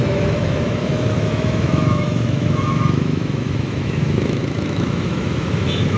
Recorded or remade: remade